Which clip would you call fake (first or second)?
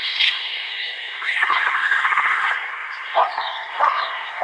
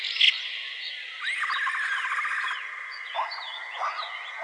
first